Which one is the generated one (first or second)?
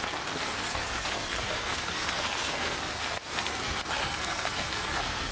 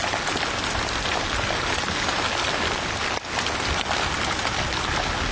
first